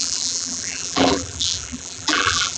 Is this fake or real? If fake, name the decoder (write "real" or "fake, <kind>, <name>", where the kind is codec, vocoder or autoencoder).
fake, vocoder, BigVGAN v2